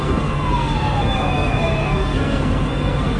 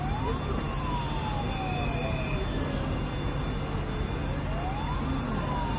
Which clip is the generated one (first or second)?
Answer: first